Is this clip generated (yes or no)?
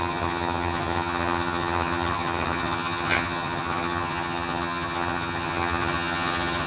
yes